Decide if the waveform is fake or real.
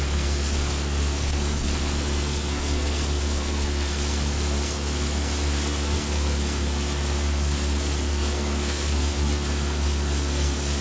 fake